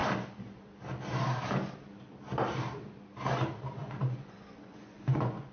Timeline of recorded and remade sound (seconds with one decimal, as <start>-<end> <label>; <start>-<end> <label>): 0.0-3.8 recorded; 3.8-5.5 remade